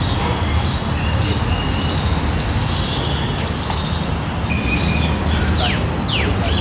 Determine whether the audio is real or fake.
real